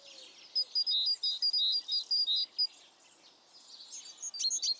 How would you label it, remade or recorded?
recorded